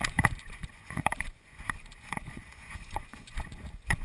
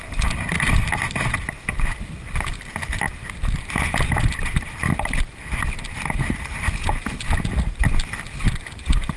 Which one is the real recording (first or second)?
second